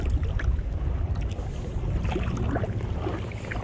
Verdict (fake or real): real